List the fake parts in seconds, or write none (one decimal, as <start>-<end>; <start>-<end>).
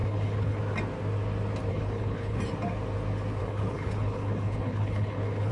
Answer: 0.0-0.6; 1.7-2.4; 3.4-5.5